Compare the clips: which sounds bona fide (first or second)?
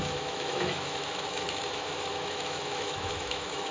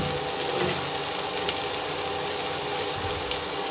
second